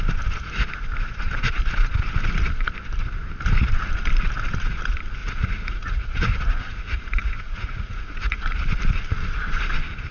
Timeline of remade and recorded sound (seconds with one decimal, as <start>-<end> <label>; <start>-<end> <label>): 0.0-5.2 recorded; 5.2-8.4 remade; 8.4-10.1 recorded